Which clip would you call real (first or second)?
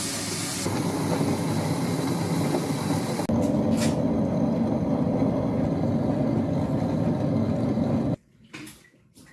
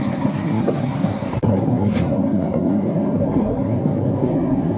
first